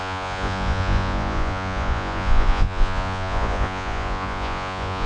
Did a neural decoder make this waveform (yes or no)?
yes